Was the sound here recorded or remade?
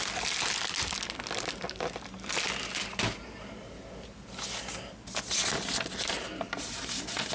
recorded